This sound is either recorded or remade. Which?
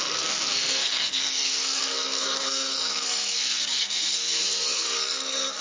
remade